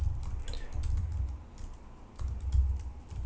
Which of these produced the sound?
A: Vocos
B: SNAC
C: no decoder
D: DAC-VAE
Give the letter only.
C